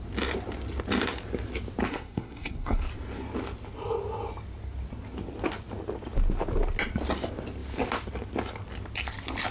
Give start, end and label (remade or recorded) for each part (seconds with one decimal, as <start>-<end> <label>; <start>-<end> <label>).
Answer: 0.0-1.9 recorded; 1.9-2.8 remade; 2.8-9.5 recorded